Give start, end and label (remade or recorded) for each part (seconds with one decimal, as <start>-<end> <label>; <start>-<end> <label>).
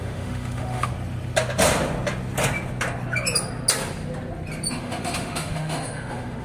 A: 0.0-0.9 remade; 0.9-4.7 recorded; 4.7-6.4 remade